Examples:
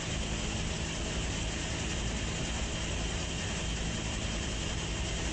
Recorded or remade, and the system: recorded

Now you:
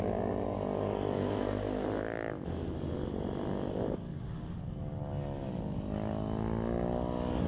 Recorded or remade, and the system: recorded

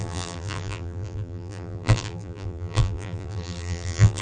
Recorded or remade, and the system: remade, vocoder, BigVGAN v2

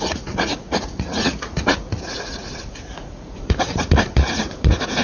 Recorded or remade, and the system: remade, vocoder, Vocos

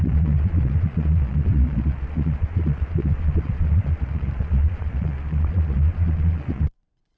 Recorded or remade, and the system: remade, vocoder, Vocos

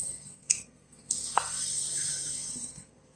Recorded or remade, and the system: remade, codec, SNAC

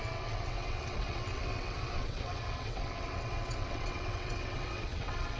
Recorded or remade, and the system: remade, vocoder, WaveNeXt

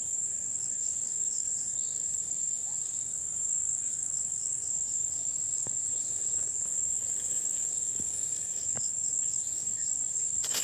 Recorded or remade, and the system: remade, codec, DAC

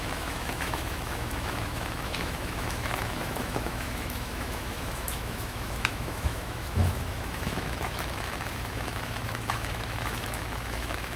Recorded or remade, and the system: remade, autoencoder, DAC-VAE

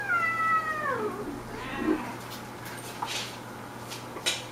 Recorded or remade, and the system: recorded